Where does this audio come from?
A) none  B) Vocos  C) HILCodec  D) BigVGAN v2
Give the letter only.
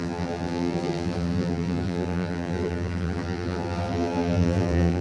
D